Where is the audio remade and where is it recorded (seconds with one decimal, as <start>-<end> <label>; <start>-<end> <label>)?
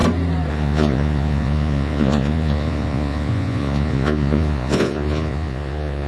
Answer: 0.0-0.5 recorded; 0.5-6.1 remade